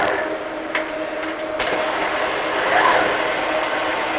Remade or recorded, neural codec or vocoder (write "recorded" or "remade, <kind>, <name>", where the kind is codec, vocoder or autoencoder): recorded